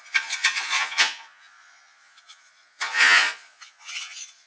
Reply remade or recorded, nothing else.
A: remade